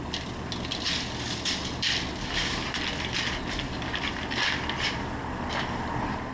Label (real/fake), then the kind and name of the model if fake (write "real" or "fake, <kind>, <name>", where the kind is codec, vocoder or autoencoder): real